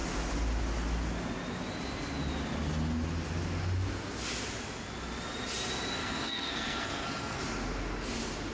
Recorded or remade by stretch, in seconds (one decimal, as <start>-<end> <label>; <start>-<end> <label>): 0.0-6.0 recorded; 6.0-7.4 remade; 7.4-8.5 recorded